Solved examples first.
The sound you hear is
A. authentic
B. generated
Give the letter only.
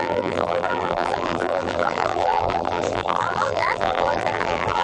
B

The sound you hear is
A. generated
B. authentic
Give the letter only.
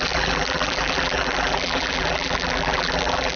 A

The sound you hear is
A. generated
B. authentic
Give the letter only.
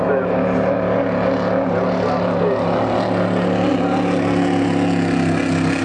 B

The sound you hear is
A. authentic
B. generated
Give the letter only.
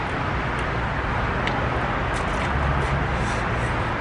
A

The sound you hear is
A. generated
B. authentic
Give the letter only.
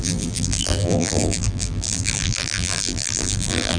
A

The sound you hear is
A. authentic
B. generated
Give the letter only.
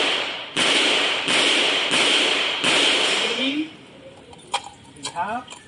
B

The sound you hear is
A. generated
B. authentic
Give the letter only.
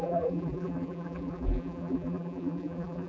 A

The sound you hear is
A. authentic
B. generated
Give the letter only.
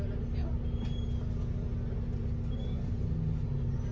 A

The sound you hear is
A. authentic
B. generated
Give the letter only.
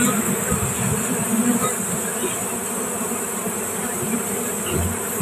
A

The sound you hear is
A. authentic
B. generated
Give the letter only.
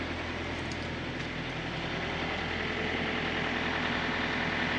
A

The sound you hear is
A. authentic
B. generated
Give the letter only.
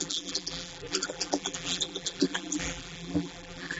B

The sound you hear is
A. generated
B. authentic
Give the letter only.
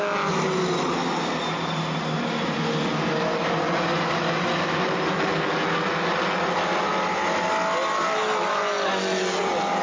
B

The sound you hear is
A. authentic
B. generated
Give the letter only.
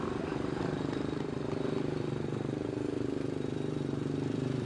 B